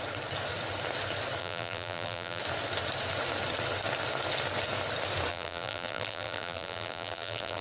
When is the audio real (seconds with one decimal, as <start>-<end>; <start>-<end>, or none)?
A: 0.0-1.4; 2.4-5.3